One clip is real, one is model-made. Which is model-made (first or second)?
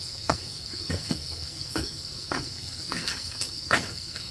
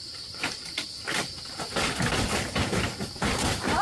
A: first